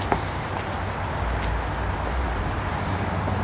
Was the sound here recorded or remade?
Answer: recorded